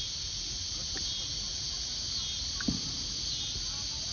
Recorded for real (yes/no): yes